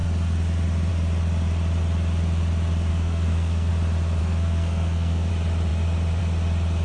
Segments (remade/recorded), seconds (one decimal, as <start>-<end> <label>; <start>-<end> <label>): 0.0-2.9 recorded; 2.9-3.7 remade; 3.7-4.2 recorded; 4.2-5.3 remade; 5.3-6.8 recorded